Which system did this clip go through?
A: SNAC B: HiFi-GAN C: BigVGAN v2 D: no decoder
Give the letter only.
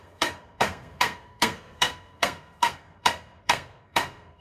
A